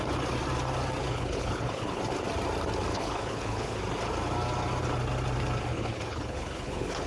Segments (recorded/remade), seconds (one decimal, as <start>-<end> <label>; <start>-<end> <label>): 0.0-1.0 recorded; 1.0-2.0 remade; 2.0-2.9 recorded; 2.9-3.8 remade; 3.8-5.7 recorded; 5.7-7.1 remade